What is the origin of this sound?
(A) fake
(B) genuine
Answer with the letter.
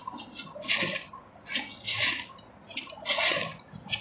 B